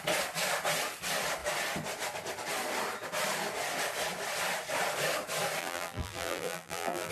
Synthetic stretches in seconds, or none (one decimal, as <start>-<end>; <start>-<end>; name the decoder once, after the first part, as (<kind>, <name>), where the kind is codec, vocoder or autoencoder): 5.6-7.1 (vocoder, BigVGAN v2)